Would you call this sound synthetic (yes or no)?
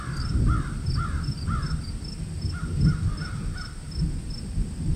no